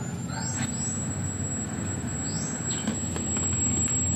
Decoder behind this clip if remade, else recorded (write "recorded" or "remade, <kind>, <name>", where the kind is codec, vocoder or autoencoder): recorded